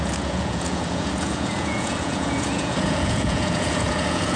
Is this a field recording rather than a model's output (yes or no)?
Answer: no